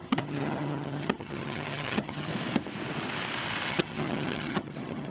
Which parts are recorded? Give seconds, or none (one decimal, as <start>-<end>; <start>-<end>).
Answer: 2.3-3.7